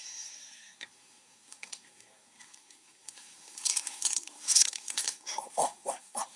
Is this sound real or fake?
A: fake